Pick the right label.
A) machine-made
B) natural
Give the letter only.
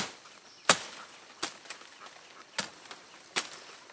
B